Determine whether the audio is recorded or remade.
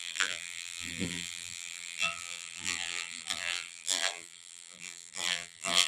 remade